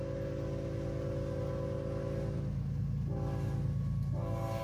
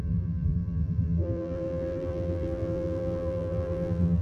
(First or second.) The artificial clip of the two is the second